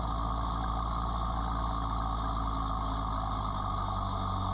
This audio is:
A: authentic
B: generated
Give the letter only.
A